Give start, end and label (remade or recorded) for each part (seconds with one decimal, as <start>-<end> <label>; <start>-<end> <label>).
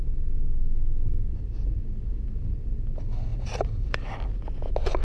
0.0-3.3 recorded; 3.3-4.4 remade; 4.4-5.0 recorded